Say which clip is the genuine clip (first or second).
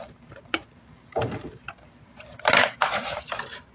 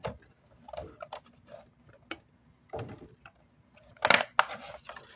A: second